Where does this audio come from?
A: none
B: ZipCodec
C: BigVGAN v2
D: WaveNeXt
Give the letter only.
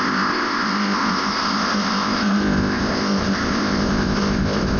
B